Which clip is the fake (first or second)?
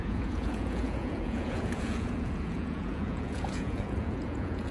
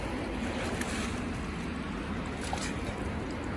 first